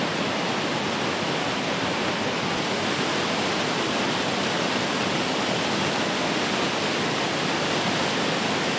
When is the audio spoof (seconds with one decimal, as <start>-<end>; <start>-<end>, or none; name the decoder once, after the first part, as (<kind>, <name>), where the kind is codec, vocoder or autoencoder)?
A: none